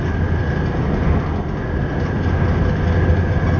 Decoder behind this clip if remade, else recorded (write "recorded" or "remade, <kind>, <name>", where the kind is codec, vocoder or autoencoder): recorded